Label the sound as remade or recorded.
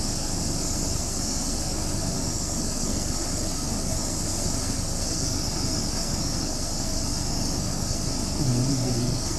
remade